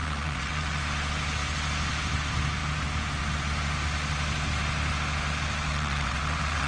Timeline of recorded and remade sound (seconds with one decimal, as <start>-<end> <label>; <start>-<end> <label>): 0.0-0.8 remade; 0.8-5.7 recorded; 5.7-6.7 remade